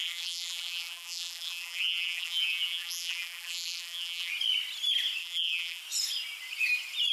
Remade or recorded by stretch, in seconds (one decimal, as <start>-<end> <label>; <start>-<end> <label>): 0.0-4.3 remade; 4.3-5.2 recorded; 5.2-5.8 remade; 5.8-7.1 recorded